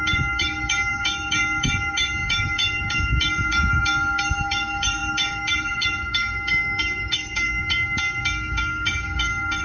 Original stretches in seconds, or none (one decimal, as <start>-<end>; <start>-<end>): none